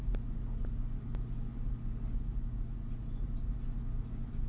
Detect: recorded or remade recorded